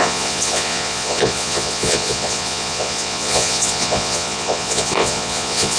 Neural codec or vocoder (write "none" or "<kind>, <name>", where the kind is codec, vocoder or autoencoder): vocoder, Vocos